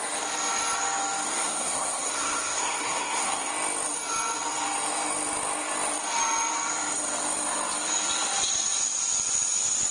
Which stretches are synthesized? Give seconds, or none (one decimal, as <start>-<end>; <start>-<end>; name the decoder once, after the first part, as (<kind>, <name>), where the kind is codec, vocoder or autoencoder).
1.3-3.5 (codec, SNAC)